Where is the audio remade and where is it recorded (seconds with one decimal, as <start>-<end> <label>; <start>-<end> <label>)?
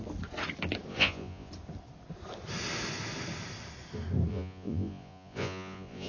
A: 0.0-0.9 recorded; 0.9-1.5 remade; 1.5-4.3 recorded; 4.3-6.1 remade